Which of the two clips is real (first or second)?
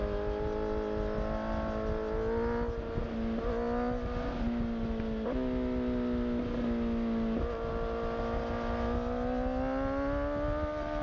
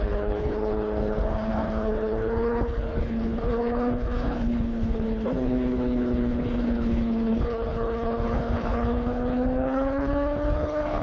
first